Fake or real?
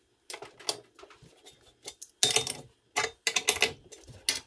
real